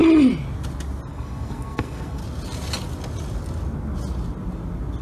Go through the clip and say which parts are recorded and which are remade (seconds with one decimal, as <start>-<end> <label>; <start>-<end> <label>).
0.0-1.1 recorded; 1.1-2.2 remade; 2.2-5.0 recorded